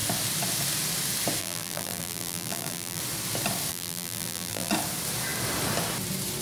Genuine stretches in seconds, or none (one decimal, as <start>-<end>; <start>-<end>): 0.0-1.4; 3.0-3.7; 4.7-6.4